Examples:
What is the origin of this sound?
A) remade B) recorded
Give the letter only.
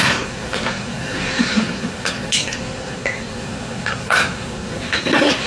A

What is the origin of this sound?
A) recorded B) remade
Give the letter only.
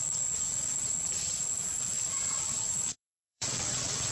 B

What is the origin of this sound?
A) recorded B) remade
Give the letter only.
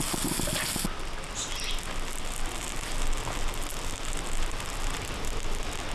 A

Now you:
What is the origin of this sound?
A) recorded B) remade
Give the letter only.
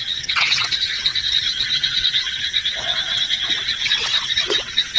B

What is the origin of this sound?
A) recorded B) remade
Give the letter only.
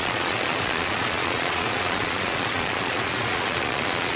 B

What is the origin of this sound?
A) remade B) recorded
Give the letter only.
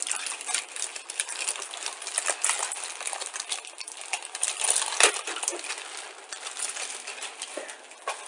B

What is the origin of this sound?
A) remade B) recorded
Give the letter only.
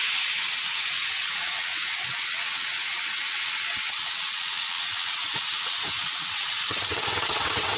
A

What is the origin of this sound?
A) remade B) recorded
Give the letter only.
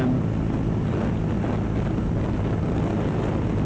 B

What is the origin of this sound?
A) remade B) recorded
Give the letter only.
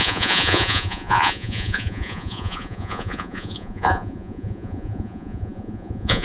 A